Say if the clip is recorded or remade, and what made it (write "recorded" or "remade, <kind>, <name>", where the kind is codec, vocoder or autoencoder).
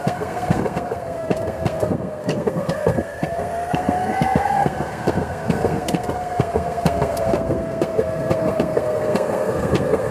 remade, codec, SNAC